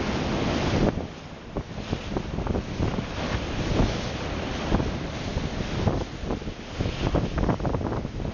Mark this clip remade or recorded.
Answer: recorded